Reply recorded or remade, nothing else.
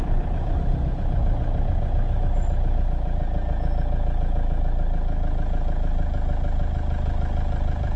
recorded